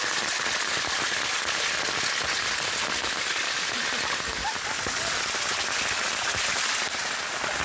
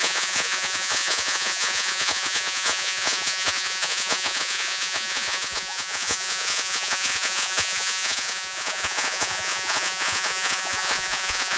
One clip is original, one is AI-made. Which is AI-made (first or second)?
second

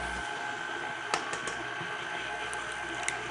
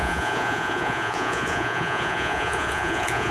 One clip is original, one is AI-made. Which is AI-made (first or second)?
second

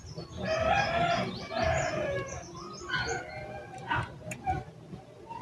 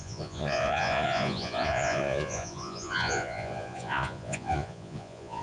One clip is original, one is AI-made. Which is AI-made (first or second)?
second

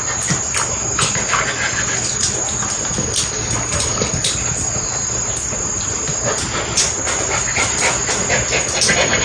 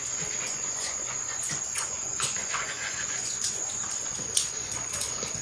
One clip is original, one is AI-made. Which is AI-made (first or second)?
second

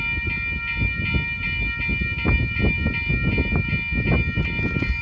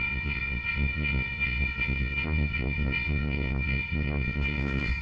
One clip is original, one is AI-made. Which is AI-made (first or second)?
second